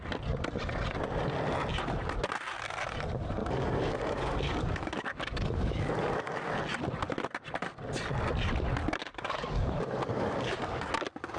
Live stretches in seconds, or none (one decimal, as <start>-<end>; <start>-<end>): 0.0-3.4; 6.5-9.0; 10.9-11.4